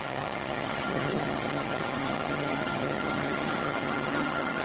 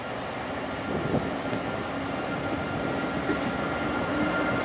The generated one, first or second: first